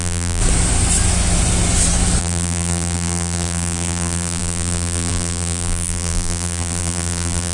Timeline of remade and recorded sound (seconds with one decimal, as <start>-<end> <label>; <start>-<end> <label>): 0.0-0.4 remade; 0.4-2.2 recorded; 2.2-7.5 remade